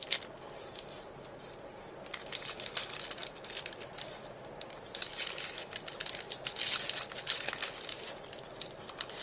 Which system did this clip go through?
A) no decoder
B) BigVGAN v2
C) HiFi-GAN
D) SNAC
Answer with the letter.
A